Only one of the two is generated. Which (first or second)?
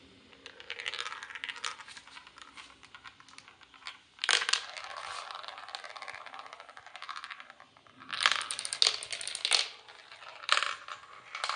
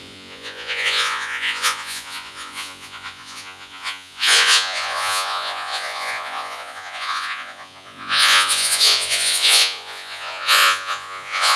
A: second